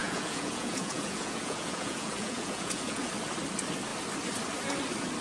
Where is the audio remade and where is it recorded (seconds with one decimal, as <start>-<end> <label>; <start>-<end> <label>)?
0.0-3.1 remade; 3.1-5.2 recorded